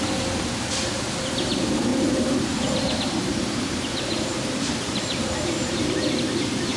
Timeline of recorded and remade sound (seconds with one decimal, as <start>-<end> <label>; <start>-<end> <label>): 0.0-1.9 recorded; 1.9-5.8 remade; 5.8-6.8 recorded

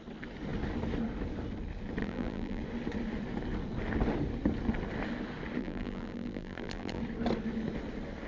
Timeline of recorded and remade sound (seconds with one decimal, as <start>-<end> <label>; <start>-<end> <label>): 0.0-2.0 recorded; 2.0-2.6 remade; 2.6-5.6 recorded; 5.6-7.0 remade; 7.0-8.3 recorded

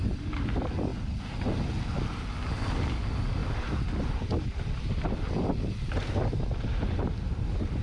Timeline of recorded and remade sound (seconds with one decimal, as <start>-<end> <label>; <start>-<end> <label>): 0.0-7.8 recorded

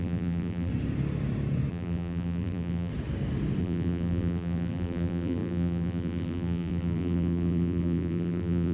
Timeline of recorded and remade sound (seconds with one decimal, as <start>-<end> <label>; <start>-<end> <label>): 0.0-0.7 remade; 0.7-1.7 recorded; 1.7-2.9 remade; 2.9-3.6 recorded; 3.6-8.7 remade

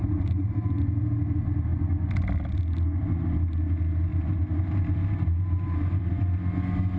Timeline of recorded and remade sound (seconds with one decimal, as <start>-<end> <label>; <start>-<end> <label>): 0.0-0.8 remade; 0.8-4.1 recorded; 4.1-6.1 remade; 6.1-7.0 recorded

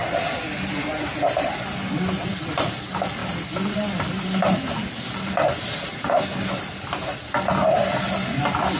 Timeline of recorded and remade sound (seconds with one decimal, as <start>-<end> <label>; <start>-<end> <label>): 0.0-8.8 recorded

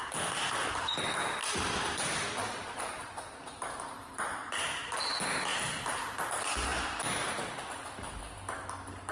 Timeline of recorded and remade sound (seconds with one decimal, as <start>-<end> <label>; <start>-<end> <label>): 0.0-1.4 recorded; 1.4-4.6 remade; 4.6-5.5 recorded; 5.5-6.2 remade; 6.2-9.1 recorded